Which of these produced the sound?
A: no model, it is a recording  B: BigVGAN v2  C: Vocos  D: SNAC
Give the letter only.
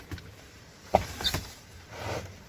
A